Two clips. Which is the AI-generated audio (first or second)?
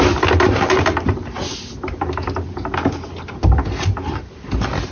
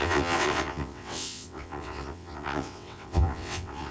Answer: second